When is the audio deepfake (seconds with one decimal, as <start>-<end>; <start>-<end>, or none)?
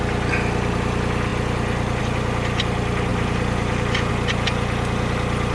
3.1-4.1